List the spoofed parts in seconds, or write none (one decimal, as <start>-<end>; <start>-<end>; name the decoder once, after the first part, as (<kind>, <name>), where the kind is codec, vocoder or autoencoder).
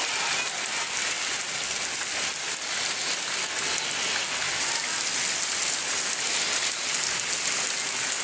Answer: none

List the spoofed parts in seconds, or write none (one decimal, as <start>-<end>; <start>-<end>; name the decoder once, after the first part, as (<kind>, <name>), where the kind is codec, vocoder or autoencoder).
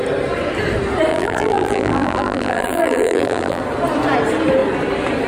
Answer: 1.1-3.6 (vocoder, BigVGAN v2)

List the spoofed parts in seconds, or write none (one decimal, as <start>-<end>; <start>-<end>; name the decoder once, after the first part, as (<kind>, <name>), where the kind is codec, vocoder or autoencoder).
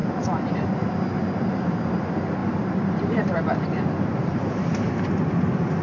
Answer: 0.0-1.9 (vocoder, BigVGAN v2); 2.4-4.9